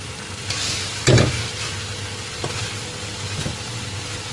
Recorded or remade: recorded